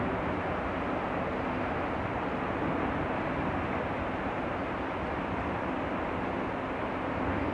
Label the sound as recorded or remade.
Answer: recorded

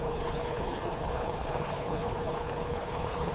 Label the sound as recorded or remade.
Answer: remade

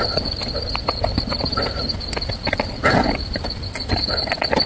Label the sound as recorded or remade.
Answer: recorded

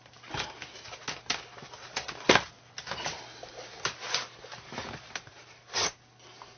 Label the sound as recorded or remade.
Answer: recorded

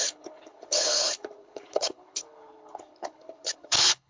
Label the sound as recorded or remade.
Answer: remade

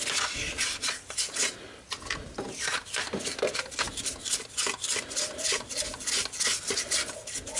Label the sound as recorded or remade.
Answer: recorded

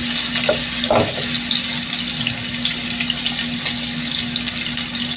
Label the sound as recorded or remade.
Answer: recorded